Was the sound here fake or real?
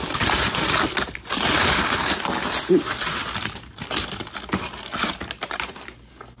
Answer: real